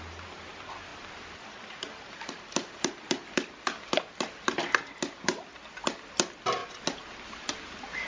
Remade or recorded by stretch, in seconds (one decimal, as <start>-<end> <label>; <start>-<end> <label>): 0.0-8.1 recorded